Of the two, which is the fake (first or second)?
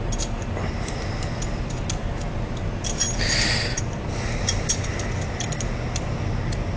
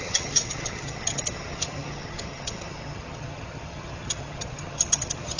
second